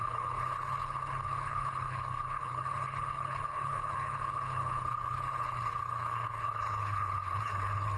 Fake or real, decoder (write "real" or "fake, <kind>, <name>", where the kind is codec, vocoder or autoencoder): fake, codec, HILCodec